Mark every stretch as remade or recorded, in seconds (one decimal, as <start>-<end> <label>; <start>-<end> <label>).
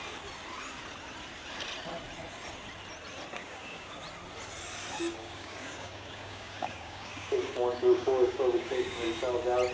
0.0-3.4 recorded; 3.4-4.0 remade; 4.0-5.2 recorded; 5.2-9.1 remade; 9.1-9.7 recorded